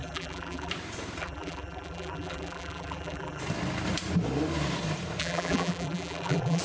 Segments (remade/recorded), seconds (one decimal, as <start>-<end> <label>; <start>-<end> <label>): 0.0-0.7 remade; 0.7-1.2 recorded; 1.2-3.4 remade; 3.4-5.2 recorded; 5.2-6.6 remade